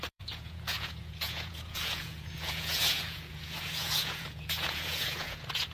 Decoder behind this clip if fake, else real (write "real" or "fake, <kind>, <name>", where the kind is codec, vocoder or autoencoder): fake, vocoder, Vocos